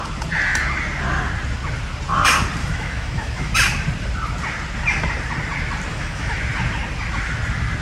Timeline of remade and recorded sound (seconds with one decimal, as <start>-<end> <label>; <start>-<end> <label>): 0.0-2.6 recorded; 2.6-3.5 remade; 3.5-5.9 recorded; 5.9-6.4 remade; 6.4-7.8 recorded